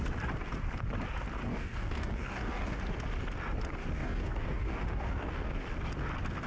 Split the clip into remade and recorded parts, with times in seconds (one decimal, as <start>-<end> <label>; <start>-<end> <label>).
0.0-1.5 recorded; 1.5-2.8 remade; 2.8-3.8 recorded; 3.8-5.5 remade; 5.5-6.5 recorded

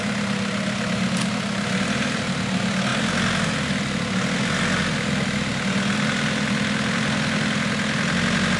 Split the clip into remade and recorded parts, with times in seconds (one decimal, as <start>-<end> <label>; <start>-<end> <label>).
0.0-8.6 recorded

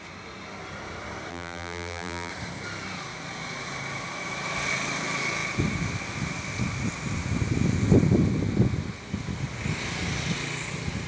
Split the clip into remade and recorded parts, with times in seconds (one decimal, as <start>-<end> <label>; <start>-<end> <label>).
0.0-1.3 recorded; 1.3-2.3 remade; 2.3-11.1 recorded